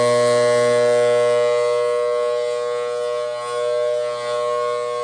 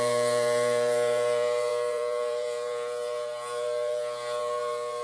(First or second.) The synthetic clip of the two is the second